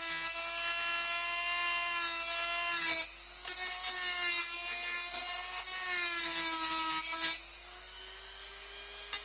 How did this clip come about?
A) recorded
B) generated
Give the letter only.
A